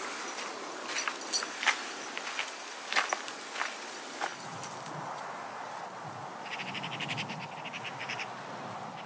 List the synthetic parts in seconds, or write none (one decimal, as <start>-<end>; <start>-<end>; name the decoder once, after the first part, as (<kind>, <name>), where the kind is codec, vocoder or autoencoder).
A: none